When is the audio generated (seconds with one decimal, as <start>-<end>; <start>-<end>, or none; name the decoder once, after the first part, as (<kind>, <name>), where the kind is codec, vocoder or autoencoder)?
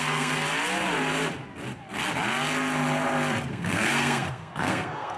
0.0-0.4 (codec, SNAC); 3.5-5.2